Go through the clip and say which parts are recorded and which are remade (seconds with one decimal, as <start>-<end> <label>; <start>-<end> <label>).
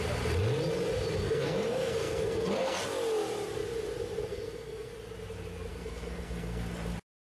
0.0-1.2 recorded; 1.2-2.8 remade; 2.8-4.3 recorded; 4.3-4.9 remade; 4.9-5.7 recorded; 5.7-6.7 remade; 6.7-7.2 recorded